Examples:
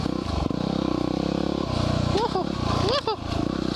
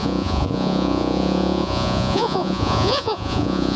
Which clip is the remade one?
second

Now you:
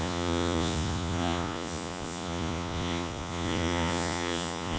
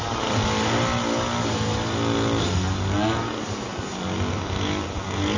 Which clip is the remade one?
first